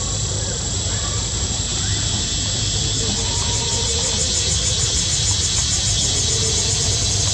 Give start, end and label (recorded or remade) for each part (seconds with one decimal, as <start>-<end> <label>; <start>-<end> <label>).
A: 0.0-7.3 recorded